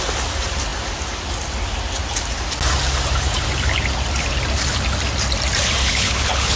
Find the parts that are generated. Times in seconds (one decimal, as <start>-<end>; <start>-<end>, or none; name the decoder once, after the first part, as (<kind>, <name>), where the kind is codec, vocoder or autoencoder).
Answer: 5.8-6.6 (codec, HILCodec)